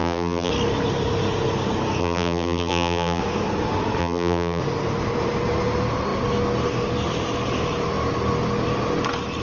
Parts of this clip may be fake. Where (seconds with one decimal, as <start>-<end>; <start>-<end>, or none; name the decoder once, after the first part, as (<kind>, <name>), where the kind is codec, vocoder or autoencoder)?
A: 0.0-0.5 (vocoder, BigVGAN v2); 2.0-3.2; 4.0-4.6